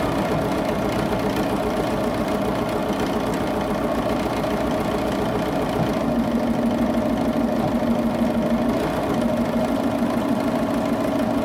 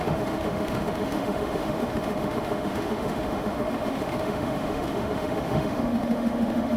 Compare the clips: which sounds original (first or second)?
first